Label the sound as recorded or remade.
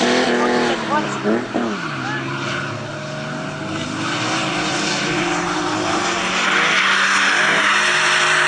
recorded